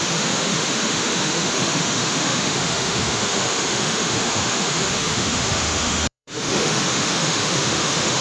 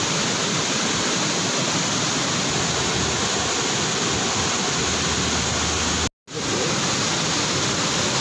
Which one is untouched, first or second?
second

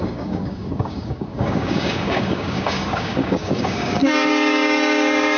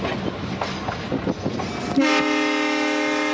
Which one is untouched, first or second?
second